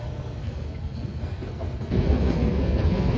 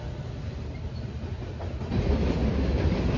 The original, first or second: second